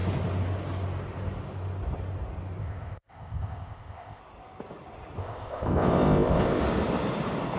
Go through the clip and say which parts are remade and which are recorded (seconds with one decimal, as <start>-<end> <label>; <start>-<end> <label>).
0.0-2.6 recorded; 2.6-4.2 remade; 4.2-5.2 recorded; 5.2-6.6 remade; 6.6-7.6 recorded